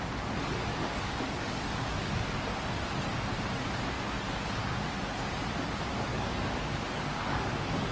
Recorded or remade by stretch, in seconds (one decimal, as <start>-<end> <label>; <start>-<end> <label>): 0.0-0.7 recorded; 0.7-2.1 remade; 2.1-6.1 recorded; 6.1-7.9 remade